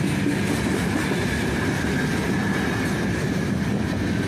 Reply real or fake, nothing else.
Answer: real